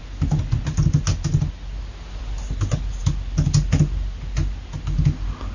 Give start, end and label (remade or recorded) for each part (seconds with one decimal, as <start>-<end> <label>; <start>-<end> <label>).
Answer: 0.0-5.5 recorded